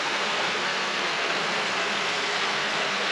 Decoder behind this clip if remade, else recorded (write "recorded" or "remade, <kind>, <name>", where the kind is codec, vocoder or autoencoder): remade, codec, SNAC